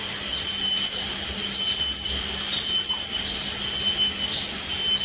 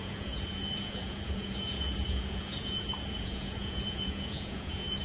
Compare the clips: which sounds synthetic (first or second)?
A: second